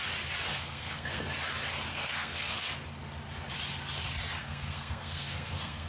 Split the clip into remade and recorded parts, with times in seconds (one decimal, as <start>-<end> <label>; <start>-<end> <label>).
0.0-0.5 recorded; 0.5-1.2 remade; 1.2-1.9 recorded; 1.9-2.7 remade; 2.7-4.4 recorded; 4.4-5.9 remade